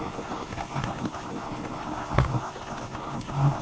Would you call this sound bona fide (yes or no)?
no